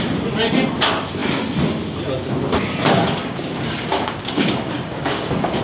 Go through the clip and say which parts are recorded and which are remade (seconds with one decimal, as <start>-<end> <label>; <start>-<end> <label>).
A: 0.0-3.2 recorded; 3.2-5.6 remade